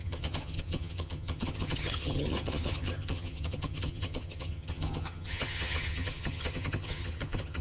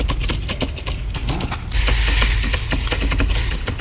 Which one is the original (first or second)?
second